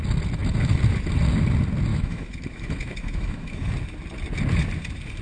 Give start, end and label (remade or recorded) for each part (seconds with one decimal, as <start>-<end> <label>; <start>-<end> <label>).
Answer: 0.0-1.9 recorded; 1.9-3.7 remade; 3.7-5.2 recorded